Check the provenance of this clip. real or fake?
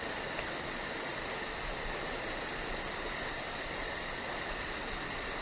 real